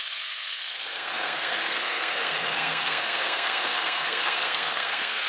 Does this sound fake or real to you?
fake